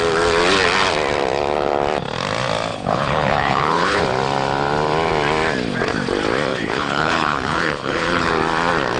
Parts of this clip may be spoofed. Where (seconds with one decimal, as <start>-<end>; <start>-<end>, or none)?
2.7-4.0; 6.5-8.3